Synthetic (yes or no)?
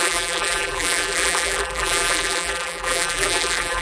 yes